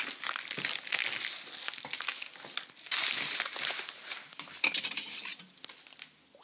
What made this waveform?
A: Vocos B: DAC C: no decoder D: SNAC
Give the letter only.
C